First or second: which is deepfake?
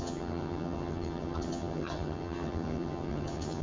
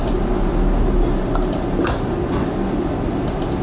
first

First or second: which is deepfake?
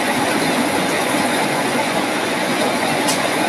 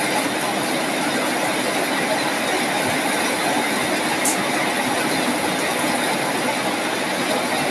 first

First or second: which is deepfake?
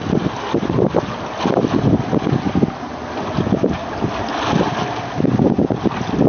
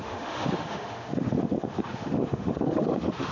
second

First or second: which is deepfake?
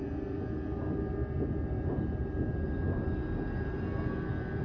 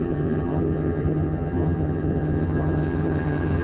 second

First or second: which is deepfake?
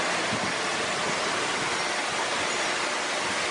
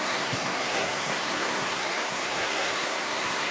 second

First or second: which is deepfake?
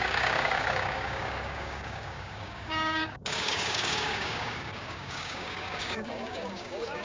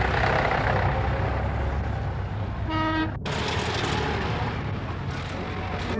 first